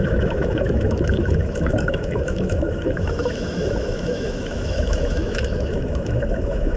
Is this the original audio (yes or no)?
no